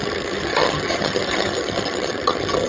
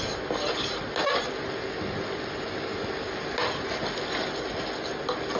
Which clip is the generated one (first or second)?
first